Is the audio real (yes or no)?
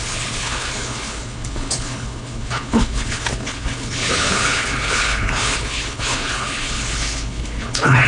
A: no